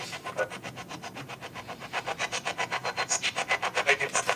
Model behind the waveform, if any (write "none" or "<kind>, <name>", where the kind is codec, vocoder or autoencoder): vocoder, BigVGAN v2